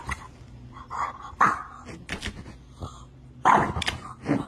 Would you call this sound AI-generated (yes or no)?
no